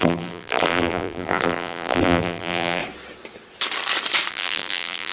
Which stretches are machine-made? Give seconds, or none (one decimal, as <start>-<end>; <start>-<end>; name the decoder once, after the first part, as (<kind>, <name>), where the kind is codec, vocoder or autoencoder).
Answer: 0.0-2.8 (vocoder, BigVGAN v2); 4.3-5.1